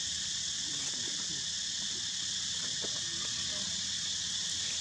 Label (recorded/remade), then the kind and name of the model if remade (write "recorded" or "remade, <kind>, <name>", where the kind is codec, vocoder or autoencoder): recorded